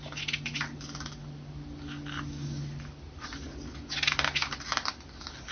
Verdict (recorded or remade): recorded